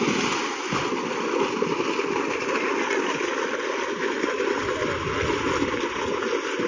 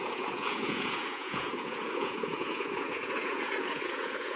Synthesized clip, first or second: second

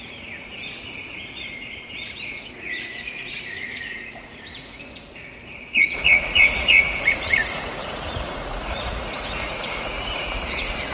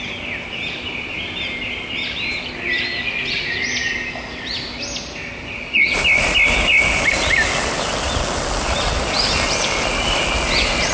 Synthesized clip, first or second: first